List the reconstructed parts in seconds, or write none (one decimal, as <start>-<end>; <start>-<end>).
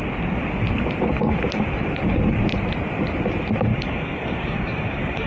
3.7-5.3